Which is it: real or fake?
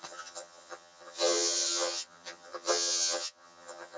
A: fake